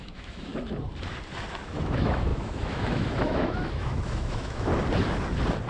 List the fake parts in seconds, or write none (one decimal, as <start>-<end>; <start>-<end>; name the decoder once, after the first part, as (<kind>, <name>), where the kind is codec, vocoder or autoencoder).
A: 0.0-0.5 (autoencoder, DAC-VAE); 1.5-4.7